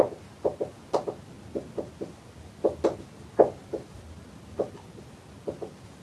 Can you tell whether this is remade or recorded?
recorded